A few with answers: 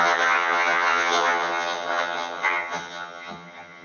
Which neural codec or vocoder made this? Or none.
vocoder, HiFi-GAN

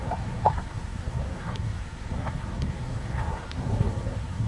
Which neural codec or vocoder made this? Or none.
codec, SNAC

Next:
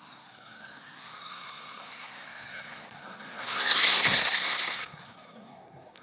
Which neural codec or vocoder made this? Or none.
codec, SNAC